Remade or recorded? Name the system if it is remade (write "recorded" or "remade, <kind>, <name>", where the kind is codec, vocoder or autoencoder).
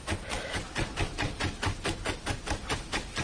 recorded